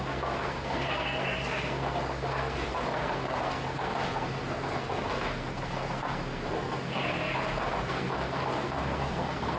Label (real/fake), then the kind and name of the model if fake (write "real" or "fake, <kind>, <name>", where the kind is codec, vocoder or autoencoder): fake, codec, SNAC